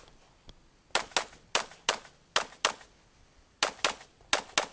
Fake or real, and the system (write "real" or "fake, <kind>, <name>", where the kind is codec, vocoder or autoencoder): real